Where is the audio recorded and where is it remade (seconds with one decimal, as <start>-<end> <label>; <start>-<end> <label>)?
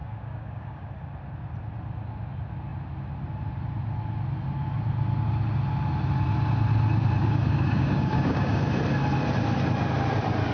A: 0.0-0.9 remade; 0.9-7.2 recorded; 7.2-8.6 remade; 8.6-10.5 recorded